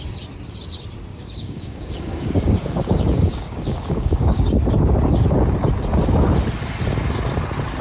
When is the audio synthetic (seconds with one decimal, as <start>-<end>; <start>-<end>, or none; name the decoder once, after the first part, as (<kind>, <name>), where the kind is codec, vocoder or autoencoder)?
1.1-4.4 (codec, DAC)